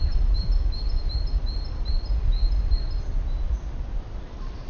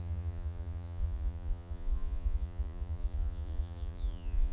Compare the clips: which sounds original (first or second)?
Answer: first